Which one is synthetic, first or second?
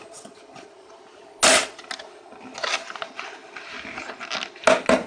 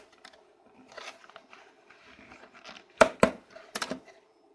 second